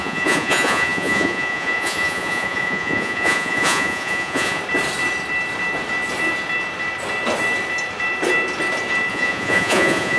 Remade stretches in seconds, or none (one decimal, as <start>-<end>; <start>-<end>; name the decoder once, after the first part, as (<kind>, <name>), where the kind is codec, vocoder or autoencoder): 0.0-4.6 (vocoder, Vocos); 9.1-10.2